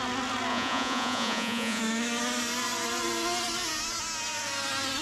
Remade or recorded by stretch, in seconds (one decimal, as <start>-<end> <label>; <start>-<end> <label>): 0.0-0.5 recorded; 0.5-1.8 remade; 1.8-5.0 recorded